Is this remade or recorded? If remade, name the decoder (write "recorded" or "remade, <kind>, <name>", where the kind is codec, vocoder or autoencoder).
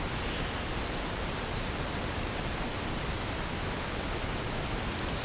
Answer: recorded